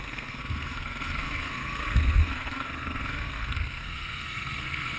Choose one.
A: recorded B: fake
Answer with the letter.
B